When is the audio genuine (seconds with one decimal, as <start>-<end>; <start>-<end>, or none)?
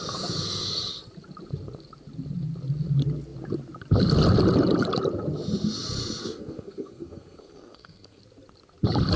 0.0-6.2; 8.2-9.2